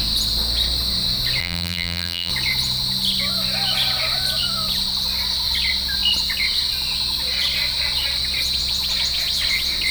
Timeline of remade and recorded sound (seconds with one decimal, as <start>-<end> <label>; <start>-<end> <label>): 0.0-1.4 recorded; 1.4-2.3 remade; 2.3-9.9 recorded